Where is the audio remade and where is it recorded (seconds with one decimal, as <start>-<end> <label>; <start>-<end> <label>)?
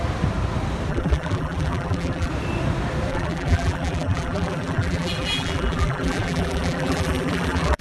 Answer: 0.0-0.9 recorded; 0.9-2.3 remade; 2.3-3.1 recorded; 3.1-7.8 remade